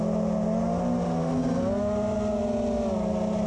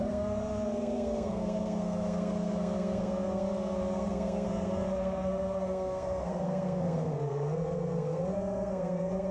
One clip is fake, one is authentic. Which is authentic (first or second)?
first